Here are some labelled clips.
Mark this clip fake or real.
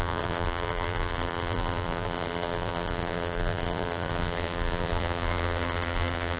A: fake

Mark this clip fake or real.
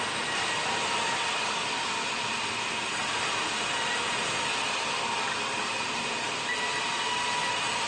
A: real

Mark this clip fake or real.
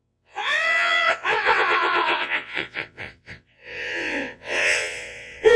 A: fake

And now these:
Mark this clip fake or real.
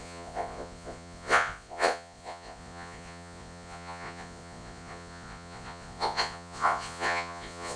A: fake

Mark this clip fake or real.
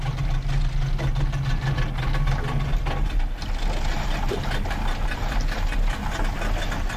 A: real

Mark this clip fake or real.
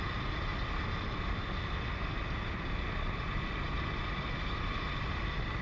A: real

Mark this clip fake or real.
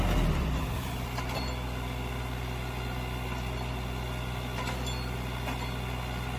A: real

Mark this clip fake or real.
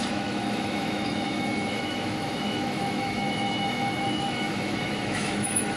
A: fake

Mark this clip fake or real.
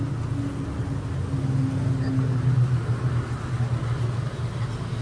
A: real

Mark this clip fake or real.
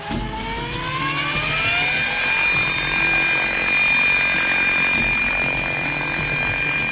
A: real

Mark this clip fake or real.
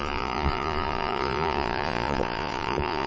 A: fake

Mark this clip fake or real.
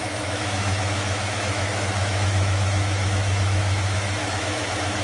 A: fake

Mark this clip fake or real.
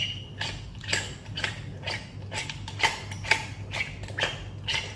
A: real